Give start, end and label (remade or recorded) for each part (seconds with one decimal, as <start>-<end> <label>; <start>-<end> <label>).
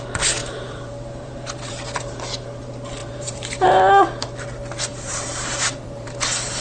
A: 0.0-0.4 recorded; 0.4-1.7 remade; 1.7-3.0 recorded; 3.0-3.8 remade; 3.8-4.9 recorded; 4.9-6.6 remade